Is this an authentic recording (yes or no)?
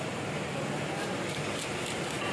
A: yes